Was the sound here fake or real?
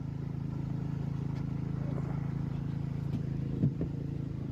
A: real